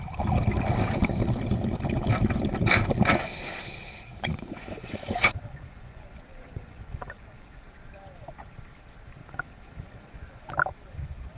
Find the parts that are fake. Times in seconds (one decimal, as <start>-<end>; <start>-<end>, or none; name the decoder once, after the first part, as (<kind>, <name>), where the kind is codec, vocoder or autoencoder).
4.1-7.6 (vocoder, Vocos); 9.2-10.5